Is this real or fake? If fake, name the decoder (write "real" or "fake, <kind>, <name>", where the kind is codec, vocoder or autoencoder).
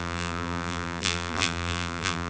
fake, vocoder, BigVGAN v2